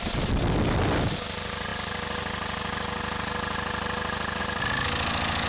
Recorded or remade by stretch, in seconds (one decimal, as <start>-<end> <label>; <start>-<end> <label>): 0.0-5.5 recorded